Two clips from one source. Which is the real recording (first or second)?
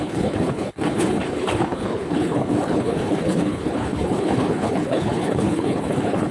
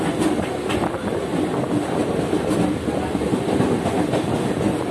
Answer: second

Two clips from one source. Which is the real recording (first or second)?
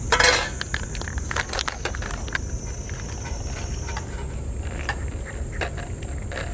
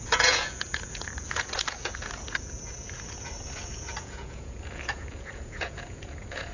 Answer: first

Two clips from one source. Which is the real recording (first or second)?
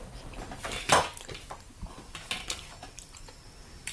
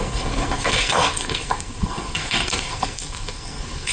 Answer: first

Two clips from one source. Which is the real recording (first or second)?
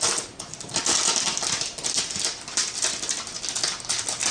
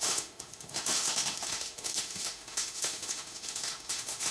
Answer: first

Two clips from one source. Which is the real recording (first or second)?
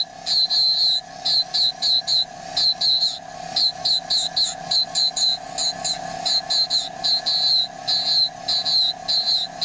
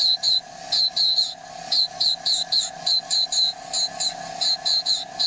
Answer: first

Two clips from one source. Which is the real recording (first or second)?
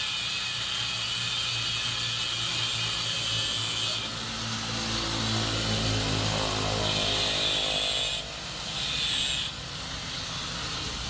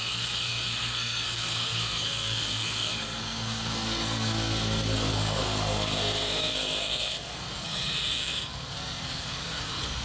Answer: first